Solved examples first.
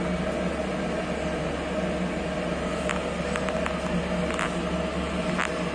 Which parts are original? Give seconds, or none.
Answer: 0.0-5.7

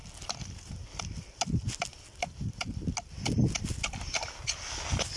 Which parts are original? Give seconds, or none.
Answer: 0.0-5.2

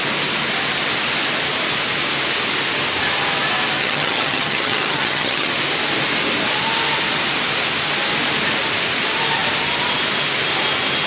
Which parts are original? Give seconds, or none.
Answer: 0.0-3.8; 5.5-11.1

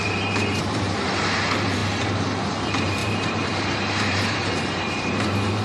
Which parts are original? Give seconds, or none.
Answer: 1.8-2.4

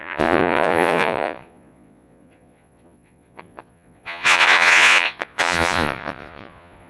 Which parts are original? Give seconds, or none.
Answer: none

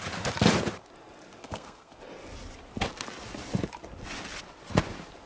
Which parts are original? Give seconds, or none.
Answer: 0.0-1.4; 2.0-5.3

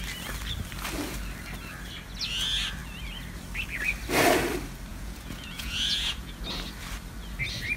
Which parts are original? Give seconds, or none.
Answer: 0.0-4.9; 6.4-7.8